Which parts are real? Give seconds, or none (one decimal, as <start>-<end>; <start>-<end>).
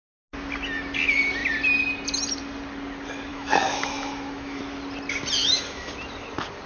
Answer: 0.0-3.3; 4.6-5.4; 5.9-6.7